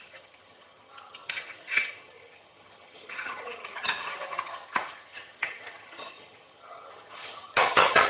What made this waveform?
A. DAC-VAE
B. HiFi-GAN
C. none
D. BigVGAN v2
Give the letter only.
B